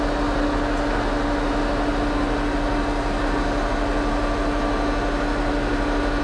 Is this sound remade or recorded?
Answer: recorded